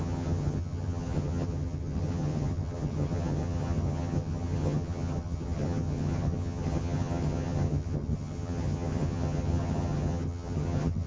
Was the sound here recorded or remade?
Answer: remade